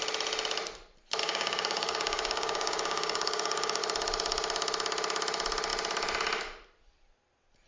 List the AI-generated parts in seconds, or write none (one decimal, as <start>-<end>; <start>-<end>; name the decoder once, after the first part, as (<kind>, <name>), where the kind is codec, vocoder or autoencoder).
1.2-3.8 (codec, DAC)